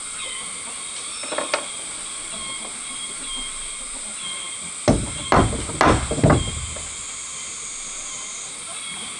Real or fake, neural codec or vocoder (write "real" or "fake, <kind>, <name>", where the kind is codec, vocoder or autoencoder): real